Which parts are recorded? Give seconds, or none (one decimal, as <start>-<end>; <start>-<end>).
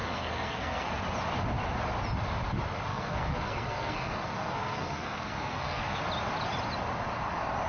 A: 0.9-2.9; 6.0-7.7